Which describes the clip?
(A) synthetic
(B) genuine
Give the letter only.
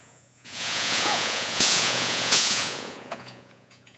A